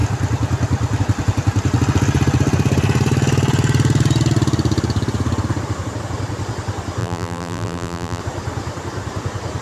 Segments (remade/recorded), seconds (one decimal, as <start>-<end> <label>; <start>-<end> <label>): 0.0-7.0 recorded; 7.0-8.2 remade; 8.2-9.6 recorded